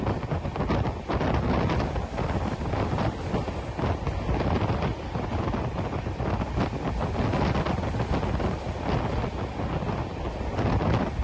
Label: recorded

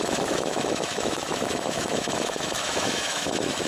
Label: remade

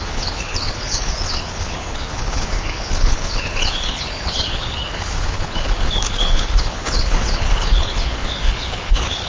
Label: remade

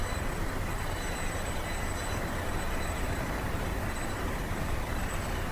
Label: remade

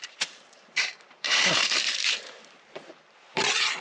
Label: remade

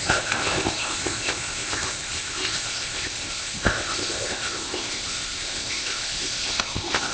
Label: remade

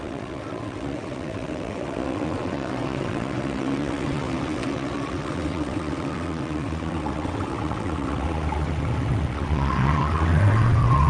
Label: remade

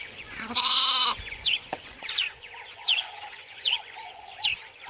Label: remade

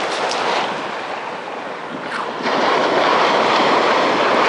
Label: recorded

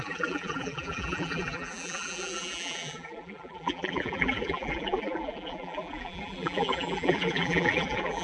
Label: remade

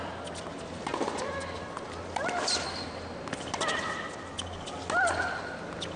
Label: recorded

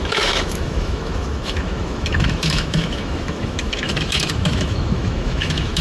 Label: remade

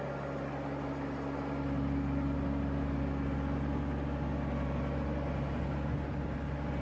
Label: recorded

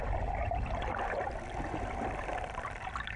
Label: recorded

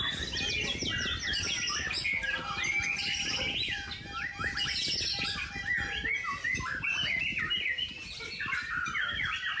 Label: recorded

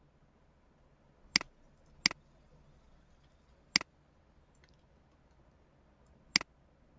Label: recorded